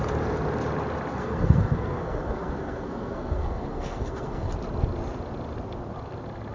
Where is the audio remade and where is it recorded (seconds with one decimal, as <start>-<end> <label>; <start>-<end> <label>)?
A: 0.0-1.1 recorded; 1.1-4.5 remade; 4.5-6.5 recorded